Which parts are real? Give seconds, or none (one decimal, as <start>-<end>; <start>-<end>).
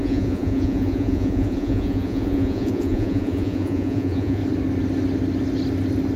4.4-6.2